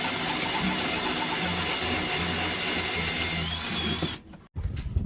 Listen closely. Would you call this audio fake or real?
real